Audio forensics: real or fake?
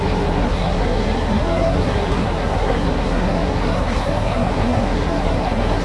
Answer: fake